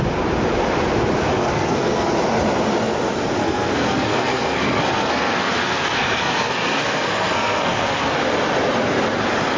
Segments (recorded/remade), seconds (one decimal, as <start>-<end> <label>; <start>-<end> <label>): 0.0-1.3 recorded; 1.3-2.1 remade; 2.1-3.4 recorded; 3.4-8.1 remade; 8.1-9.6 recorded